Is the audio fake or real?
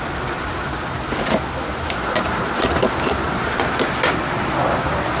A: real